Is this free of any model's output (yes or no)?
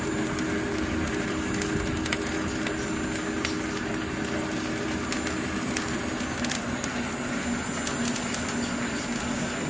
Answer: yes